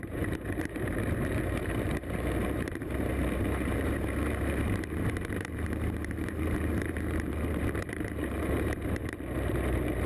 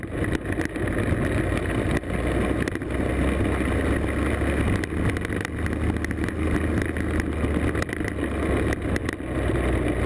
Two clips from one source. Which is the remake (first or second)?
first